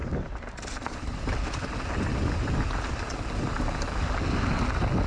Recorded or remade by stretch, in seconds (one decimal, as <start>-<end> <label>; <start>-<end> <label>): 0.0-3.1 remade; 3.1-5.1 recorded